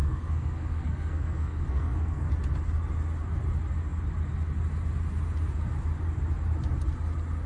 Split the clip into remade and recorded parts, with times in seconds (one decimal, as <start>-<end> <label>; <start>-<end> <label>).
0.0-2.3 remade; 2.3-7.5 recorded